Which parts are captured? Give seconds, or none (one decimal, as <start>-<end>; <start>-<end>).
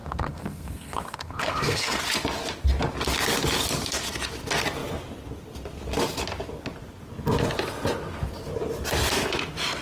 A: 2.0-9.8